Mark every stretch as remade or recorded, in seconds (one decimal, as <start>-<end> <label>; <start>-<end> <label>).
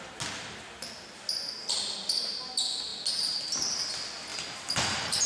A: 0.0-4.3 recorded; 4.3-5.3 remade